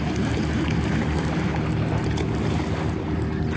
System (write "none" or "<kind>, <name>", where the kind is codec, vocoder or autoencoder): none